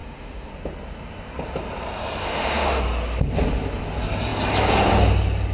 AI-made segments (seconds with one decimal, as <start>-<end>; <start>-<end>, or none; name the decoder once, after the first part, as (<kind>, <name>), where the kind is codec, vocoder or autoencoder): 0.0-0.5 (autoencoder, DAC-VAE); 2.2-2.8